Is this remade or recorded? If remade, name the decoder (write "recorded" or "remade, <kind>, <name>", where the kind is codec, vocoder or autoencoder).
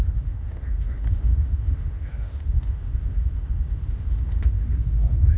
remade, autoencoder, DAC-VAE